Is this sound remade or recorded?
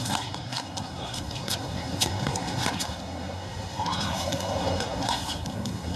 remade